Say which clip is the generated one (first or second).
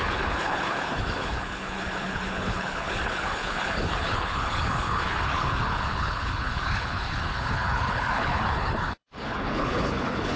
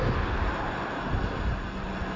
first